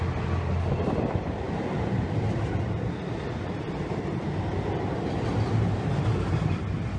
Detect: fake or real real